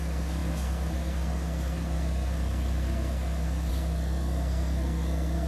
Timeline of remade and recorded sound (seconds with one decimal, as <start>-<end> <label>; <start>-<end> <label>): 0.0-5.5 remade